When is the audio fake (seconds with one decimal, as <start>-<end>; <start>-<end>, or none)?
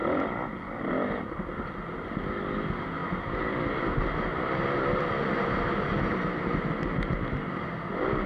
none